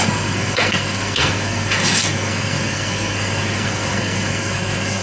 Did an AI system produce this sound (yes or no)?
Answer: yes